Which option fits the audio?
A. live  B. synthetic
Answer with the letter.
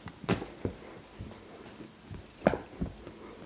A